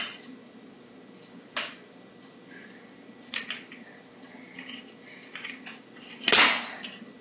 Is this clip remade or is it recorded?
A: recorded